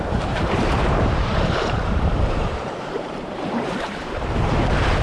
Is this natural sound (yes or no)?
no